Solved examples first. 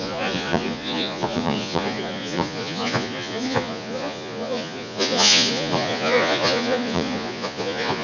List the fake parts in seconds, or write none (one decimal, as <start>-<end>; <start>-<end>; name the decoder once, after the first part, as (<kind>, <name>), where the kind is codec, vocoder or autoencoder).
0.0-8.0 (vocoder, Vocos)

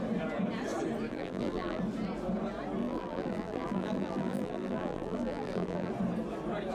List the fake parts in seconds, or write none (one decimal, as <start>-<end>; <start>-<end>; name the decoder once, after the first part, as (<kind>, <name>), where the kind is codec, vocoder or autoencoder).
1.1-1.8 (vocoder, BigVGAN v2); 2.8-5.9

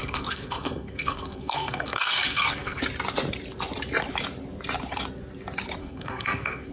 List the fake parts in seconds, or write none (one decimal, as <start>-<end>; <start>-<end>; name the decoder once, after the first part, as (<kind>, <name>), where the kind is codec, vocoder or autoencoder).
0.0-2.8 (codec, SNAC); 5.8-6.7

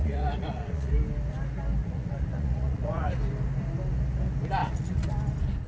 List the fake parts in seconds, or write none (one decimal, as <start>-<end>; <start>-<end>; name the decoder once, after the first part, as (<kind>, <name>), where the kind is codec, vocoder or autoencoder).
0.0-0.9 (vocoder, Vocos); 1.8-3.2; 4.6-5.1

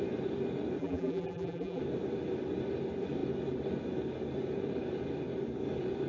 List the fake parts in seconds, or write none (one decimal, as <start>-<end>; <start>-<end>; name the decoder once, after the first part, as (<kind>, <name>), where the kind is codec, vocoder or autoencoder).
0.8-1.8 (vocoder, BigVGAN v2)